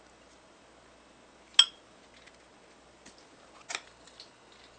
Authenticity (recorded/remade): recorded